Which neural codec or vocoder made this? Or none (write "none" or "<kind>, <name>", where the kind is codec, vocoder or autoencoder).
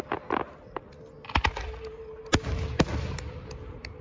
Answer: none